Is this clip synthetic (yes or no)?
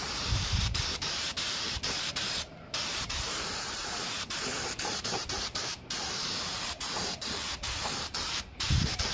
yes